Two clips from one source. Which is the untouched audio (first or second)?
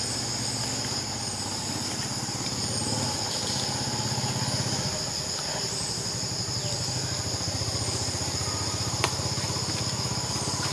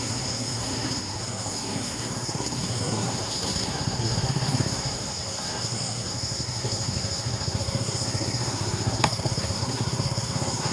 first